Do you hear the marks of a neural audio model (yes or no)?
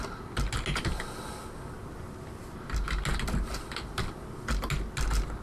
no